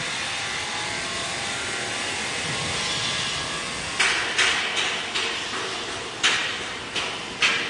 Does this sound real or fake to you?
real